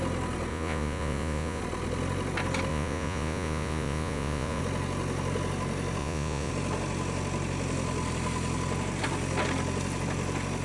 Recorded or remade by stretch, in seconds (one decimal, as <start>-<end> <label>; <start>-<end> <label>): 0.0-0.5 recorded; 0.5-1.6 remade; 1.6-2.7 recorded; 2.7-4.6 remade; 4.6-6.0 recorded; 6.0-6.5 remade; 6.5-10.6 recorded